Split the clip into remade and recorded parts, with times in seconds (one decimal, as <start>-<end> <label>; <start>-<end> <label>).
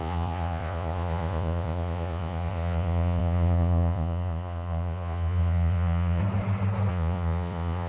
0.0-6.2 remade; 6.2-6.9 recorded; 6.9-7.9 remade